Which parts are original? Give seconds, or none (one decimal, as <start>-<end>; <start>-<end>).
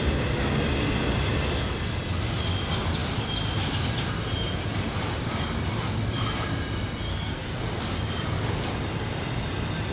0.0-7.1; 7.6-9.9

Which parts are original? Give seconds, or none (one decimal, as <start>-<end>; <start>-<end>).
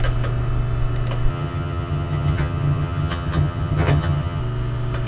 0.0-1.3; 4.4-5.1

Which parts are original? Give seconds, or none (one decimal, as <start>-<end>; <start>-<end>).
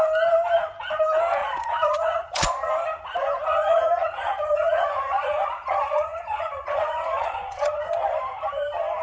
0.0-1.4; 2.7-3.5; 7.8-9.0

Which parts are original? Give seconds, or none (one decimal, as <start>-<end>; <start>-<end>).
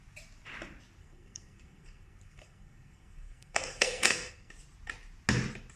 0.0-1.0; 4.5-5.8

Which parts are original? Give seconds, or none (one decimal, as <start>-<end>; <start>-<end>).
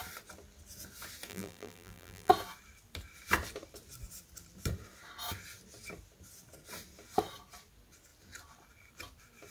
0.0-1.3; 2.3-9.5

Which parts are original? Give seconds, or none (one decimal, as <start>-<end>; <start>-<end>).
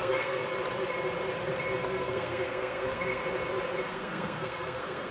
0.4-1.8; 3.2-3.9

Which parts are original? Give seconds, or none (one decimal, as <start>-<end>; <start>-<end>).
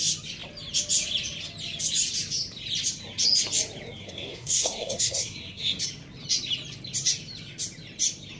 0.0-4.0; 5.8-8.4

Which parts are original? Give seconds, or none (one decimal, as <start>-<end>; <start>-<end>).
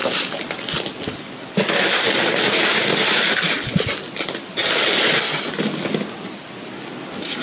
0.0-7.4